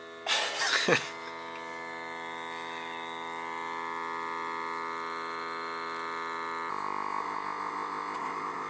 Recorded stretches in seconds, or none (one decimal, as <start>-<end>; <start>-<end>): 0.0-6.7